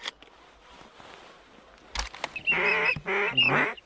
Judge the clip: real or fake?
real